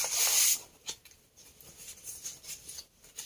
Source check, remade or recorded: recorded